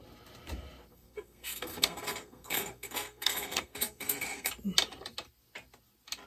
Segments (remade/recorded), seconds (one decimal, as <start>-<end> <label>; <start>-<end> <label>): 0.0-0.9 recorded; 0.9-4.5 remade; 4.5-6.3 recorded